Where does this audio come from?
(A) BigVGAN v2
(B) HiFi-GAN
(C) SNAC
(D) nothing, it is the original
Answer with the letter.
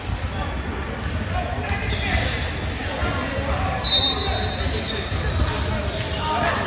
D